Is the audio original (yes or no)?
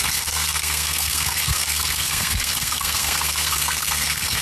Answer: no